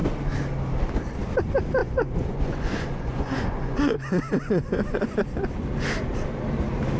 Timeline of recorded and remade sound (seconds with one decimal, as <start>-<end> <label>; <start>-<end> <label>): 0.0-1.8 recorded; 1.8-5.2 remade; 5.2-7.0 recorded